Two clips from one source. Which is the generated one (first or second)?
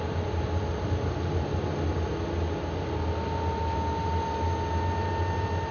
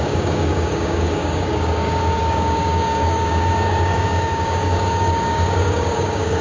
second